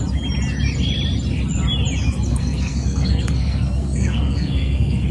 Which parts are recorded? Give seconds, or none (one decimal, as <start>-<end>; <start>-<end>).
0.0-2.3

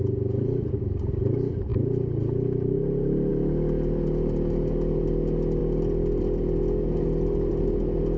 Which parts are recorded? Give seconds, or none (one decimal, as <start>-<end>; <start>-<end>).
0.0-8.2

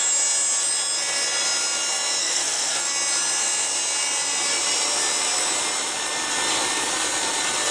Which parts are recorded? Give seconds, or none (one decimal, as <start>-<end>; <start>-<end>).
0.0-2.2; 2.8-7.7

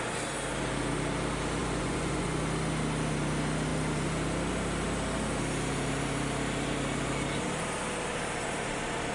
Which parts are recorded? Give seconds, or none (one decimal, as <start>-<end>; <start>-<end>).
0.0-1.6; 2.4-9.1